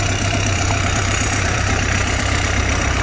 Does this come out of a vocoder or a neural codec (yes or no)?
yes